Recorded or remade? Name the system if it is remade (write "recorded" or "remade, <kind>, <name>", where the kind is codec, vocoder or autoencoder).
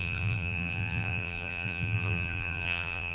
remade, vocoder, BigVGAN v2